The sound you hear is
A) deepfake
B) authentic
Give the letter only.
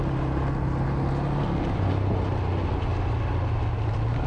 B